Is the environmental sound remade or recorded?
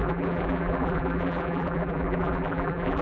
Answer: remade